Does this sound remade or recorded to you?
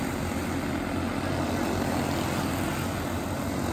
recorded